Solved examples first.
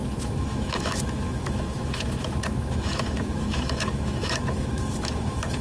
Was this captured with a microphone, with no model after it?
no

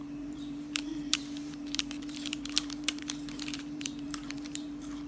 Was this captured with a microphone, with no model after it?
no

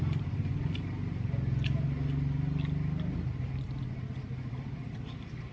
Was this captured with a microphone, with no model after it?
yes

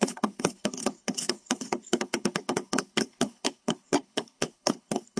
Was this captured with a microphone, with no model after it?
no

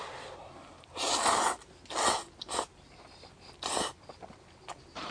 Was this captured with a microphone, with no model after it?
yes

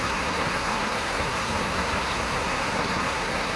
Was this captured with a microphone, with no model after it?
no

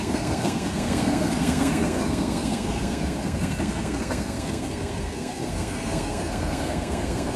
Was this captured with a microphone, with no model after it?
no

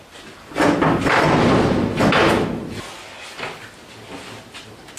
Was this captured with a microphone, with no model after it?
yes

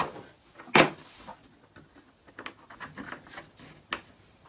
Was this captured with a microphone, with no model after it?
yes